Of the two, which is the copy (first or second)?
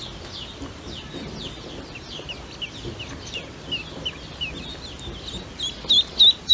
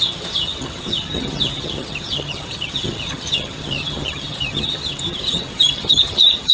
second